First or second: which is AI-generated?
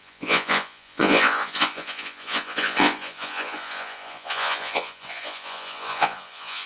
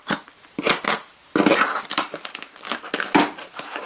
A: first